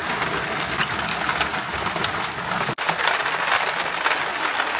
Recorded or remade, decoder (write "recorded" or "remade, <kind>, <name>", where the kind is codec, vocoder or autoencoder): recorded